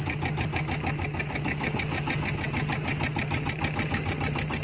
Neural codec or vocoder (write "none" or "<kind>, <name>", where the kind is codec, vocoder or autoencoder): none